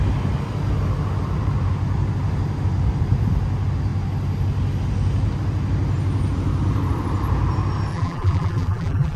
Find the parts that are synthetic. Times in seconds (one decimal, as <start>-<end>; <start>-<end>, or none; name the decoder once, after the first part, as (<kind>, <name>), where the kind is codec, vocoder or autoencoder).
7.9-9.2 (vocoder, BigVGAN v2)